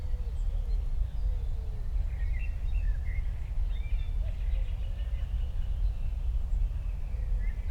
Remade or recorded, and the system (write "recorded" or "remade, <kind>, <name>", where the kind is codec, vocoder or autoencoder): recorded